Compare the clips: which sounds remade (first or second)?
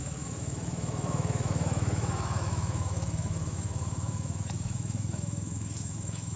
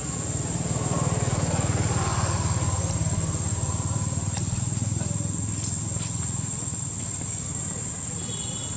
first